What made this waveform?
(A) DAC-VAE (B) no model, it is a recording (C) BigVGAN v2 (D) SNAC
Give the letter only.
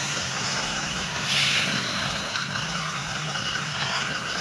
D